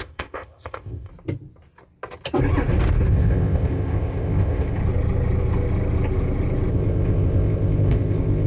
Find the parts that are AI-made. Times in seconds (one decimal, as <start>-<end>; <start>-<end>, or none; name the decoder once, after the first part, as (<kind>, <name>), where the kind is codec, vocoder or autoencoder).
0.0-1.1 (codec, ZipCodec); 3.1-4.8; 6.7-8.5